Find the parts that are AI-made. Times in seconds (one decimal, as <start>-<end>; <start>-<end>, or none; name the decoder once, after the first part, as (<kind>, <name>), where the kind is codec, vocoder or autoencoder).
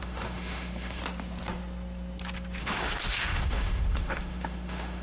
0.0-1.0 (autoencoder, DAC-VAE); 2.6-5.0